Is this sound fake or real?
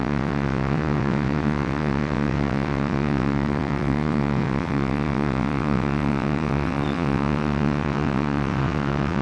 fake